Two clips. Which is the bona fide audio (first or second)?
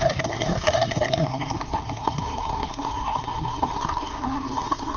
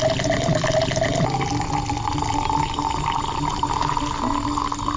second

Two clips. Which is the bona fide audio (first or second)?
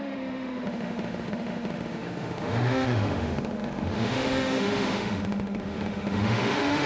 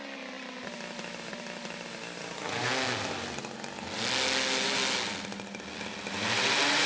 second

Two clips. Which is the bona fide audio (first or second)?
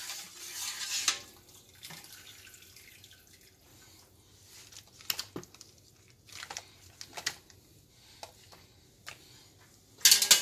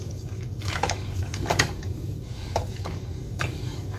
first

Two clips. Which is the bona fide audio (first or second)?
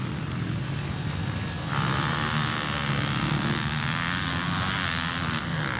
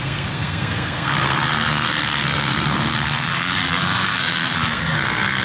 first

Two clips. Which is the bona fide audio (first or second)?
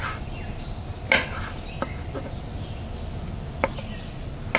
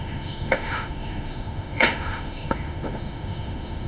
first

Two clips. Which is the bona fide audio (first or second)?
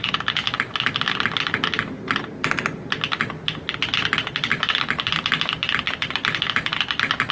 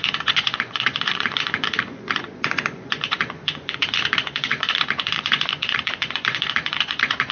first